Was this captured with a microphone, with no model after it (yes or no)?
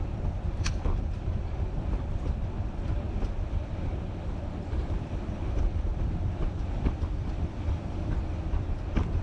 no